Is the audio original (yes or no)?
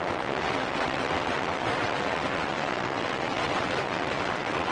no